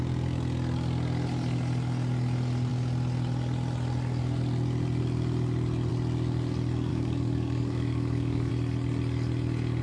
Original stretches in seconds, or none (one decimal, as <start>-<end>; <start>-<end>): 0.0-6.9; 8.5-9.8